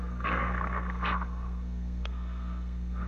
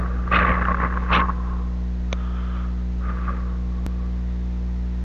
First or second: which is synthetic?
first